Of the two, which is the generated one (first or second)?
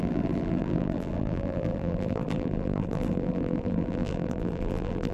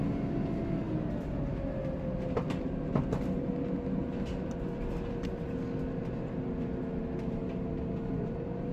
first